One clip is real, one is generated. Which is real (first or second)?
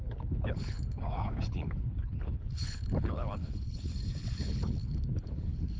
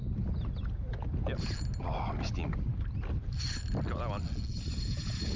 second